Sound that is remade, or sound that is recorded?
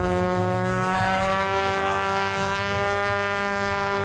remade